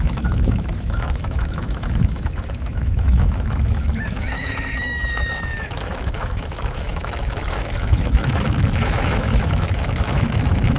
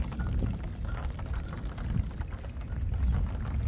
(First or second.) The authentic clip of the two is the second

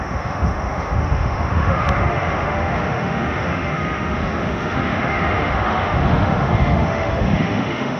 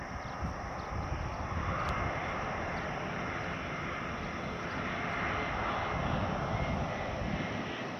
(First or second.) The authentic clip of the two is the second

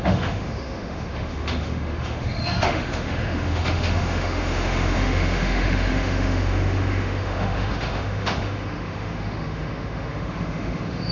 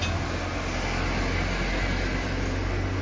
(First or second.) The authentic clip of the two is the second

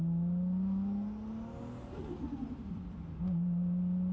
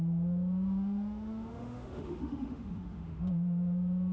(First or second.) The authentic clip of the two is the first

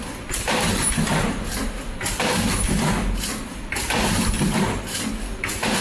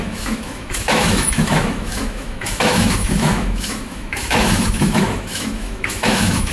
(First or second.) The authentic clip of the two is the first